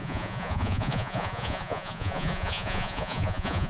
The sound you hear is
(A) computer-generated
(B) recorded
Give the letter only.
A